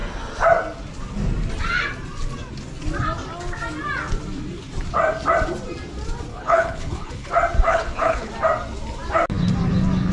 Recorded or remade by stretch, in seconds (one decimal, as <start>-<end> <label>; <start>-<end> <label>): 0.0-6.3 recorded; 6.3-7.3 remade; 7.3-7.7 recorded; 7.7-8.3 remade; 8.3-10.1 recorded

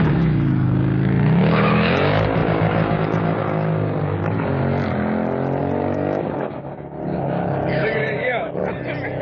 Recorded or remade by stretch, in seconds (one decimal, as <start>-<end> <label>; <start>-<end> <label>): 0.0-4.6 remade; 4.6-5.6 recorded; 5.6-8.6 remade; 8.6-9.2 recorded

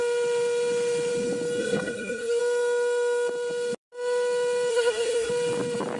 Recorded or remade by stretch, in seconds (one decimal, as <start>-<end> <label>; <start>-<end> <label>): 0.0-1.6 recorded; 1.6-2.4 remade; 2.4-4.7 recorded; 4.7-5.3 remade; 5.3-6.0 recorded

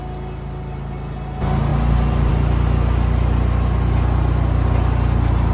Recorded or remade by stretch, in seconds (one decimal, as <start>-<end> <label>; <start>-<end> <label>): 0.0-1.7 recorded; 1.7-2.3 remade; 2.3-5.5 recorded

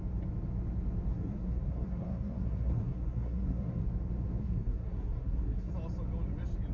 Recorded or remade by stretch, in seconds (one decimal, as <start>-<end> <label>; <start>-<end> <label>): 0.0-1.1 recorded; 1.1-3.8 remade; 3.8-4.4 recorded; 4.4-5.7 remade; 5.7-6.7 recorded

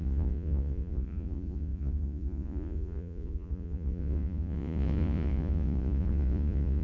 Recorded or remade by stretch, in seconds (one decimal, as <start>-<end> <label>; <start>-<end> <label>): 0.0-6.8 remade